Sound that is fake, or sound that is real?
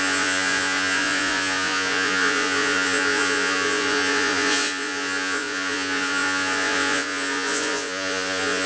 fake